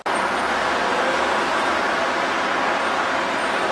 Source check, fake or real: real